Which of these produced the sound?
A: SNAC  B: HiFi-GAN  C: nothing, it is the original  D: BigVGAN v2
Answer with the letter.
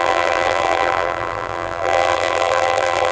D